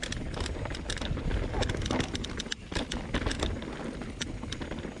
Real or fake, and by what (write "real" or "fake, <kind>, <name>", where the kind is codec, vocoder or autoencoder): real